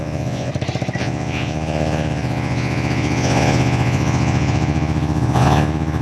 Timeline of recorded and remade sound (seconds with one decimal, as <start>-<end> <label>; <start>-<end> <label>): 0.0-0.5 remade; 0.5-1.0 recorded; 1.0-6.0 remade